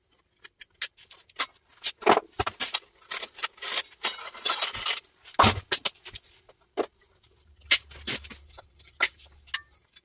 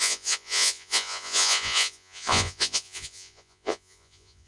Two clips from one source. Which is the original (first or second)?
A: first